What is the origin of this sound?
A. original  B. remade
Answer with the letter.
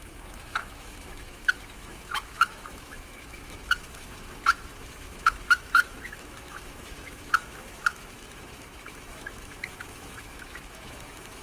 B